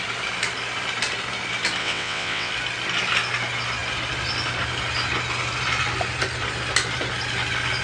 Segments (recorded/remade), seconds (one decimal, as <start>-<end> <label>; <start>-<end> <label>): 0.0-1.8 recorded; 1.8-2.5 remade; 2.5-7.8 recorded